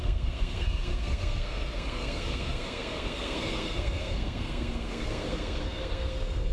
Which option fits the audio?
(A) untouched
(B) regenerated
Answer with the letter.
B